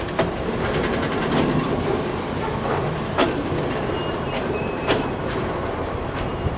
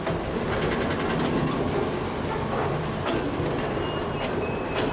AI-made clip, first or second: first